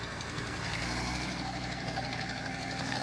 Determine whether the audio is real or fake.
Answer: fake